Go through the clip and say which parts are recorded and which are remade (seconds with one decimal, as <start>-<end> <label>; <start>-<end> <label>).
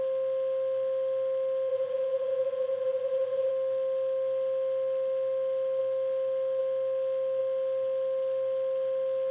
0.0-1.7 recorded; 1.7-3.5 remade; 3.5-9.3 recorded